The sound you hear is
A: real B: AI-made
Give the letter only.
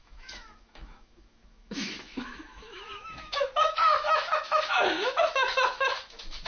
B